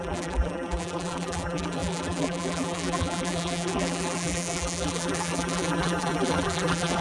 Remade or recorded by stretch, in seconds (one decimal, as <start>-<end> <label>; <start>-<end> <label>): 0.0-7.0 remade